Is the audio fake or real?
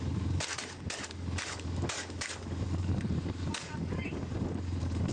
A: fake